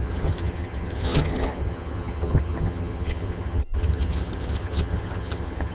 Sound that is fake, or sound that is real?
fake